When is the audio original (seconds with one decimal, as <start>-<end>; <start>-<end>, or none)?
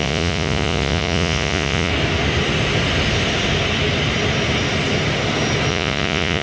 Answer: 1.9-5.7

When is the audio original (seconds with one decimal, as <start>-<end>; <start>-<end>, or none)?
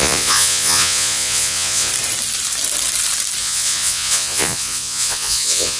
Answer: 1.9-3.4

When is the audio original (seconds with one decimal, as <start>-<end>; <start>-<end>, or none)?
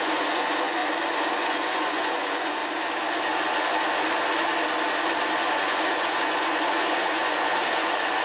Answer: 0.8-1.4; 2.6-5.5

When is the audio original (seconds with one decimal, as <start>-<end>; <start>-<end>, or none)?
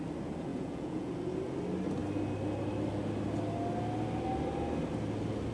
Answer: 0.0-0.5; 1.1-5.5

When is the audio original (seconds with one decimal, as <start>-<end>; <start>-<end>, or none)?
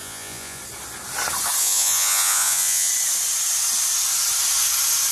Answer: 0.6-1.6; 2.9-5.1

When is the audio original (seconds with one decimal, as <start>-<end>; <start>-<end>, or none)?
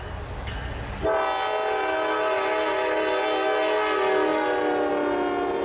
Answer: 0.0-5.6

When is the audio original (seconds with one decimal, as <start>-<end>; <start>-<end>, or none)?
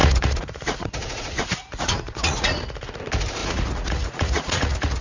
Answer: 3.0-3.4